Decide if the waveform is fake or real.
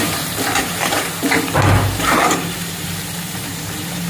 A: fake